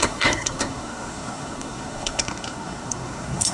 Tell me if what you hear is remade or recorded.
remade